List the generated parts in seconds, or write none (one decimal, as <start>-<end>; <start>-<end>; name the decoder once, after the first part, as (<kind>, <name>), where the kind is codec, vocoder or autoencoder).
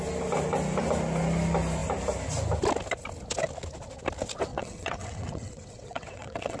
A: 4.5-6.6 (vocoder, WaveNeXt)